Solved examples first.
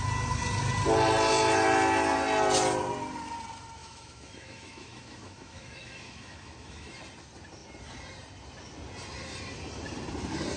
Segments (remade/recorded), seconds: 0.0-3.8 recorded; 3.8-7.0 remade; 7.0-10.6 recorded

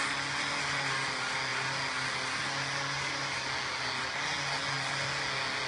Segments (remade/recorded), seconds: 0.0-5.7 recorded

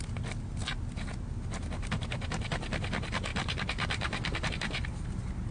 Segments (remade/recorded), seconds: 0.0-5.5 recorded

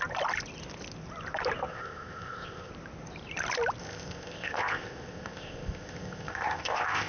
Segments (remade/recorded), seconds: 0.0-1.7 recorded; 1.7-2.7 remade; 2.7-3.8 recorded; 3.8-7.1 remade

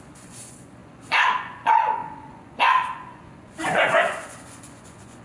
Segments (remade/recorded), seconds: 0.0-5.2 remade